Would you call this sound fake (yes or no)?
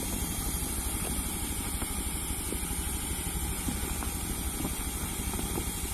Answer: no